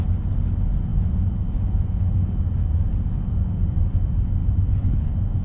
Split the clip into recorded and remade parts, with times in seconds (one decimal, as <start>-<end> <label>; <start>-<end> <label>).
0.0-5.4 recorded